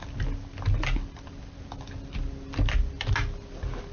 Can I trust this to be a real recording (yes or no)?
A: yes